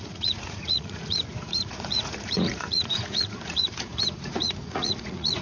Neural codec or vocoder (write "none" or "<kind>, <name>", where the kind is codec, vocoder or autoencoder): vocoder, Vocos